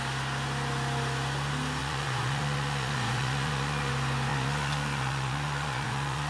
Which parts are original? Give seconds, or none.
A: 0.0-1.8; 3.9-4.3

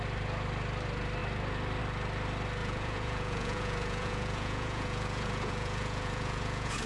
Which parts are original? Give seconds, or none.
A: 0.0-2.6

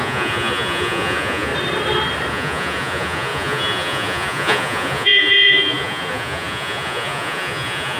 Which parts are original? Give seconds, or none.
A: 1.5-2.3

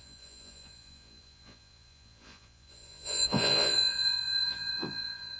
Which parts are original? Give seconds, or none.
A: none

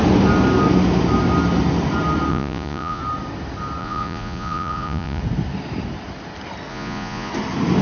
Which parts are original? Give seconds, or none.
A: 0.0-2.3; 3.0-3.8; 5.2-6.7; 7.3-7.8

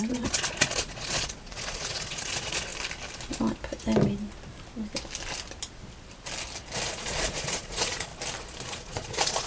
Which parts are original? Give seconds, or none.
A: 2.7-6.9; 8.1-8.7